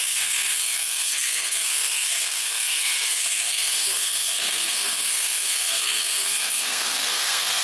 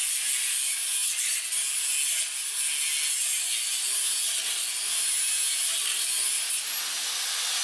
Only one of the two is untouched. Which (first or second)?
second